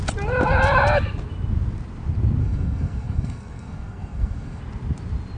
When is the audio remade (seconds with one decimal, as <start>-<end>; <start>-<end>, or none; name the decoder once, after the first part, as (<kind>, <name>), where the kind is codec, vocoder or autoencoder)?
2.4-4.6 (codec, SNAC)